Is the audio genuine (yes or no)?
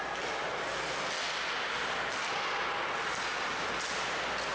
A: yes